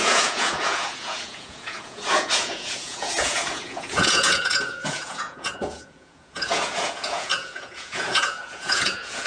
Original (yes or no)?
no